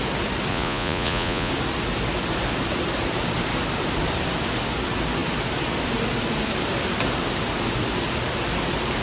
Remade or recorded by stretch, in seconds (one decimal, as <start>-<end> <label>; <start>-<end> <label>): 0.0-0.5 recorded; 0.5-1.5 remade; 1.5-9.0 recorded